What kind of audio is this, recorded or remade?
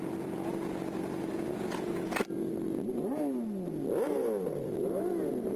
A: recorded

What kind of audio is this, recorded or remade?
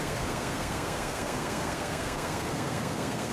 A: remade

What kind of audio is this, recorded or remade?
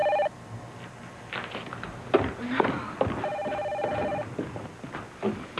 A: recorded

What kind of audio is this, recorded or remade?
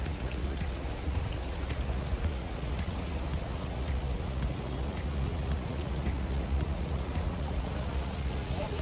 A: remade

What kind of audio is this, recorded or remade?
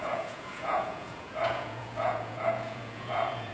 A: remade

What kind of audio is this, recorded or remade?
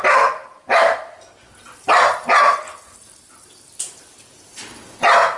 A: recorded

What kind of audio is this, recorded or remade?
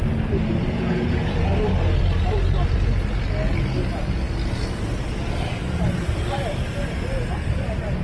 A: recorded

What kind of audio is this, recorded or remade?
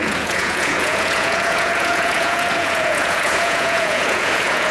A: remade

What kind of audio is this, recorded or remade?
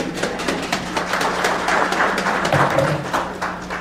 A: remade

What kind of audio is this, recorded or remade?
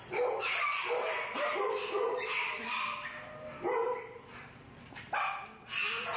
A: recorded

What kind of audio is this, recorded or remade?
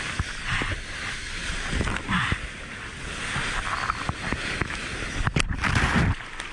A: recorded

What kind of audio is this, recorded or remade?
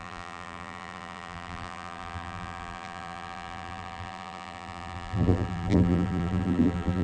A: remade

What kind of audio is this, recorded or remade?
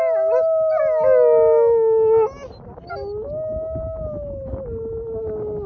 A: recorded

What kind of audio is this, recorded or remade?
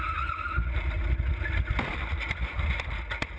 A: recorded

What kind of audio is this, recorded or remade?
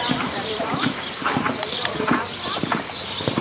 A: remade